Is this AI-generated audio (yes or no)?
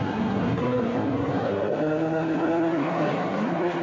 yes